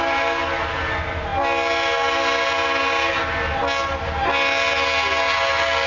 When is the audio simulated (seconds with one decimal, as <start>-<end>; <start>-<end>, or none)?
none

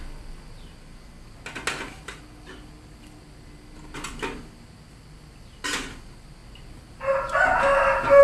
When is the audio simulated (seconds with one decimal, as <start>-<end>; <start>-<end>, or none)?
none

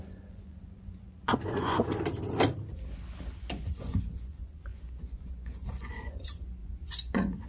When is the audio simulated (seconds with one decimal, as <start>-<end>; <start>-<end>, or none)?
0.0-1.8; 3.5-7.5

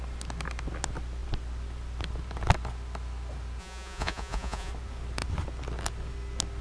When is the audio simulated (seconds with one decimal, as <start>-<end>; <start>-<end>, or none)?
3.6-4.7